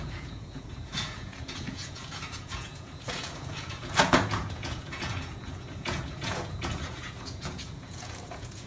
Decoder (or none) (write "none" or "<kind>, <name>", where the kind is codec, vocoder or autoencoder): vocoder, Vocos